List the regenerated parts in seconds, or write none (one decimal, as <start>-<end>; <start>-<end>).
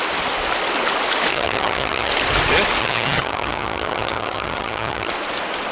1.3-2.1; 2.8-5.1